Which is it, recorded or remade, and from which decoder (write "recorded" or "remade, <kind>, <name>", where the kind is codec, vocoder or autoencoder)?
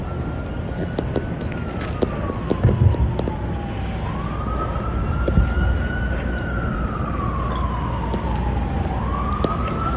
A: recorded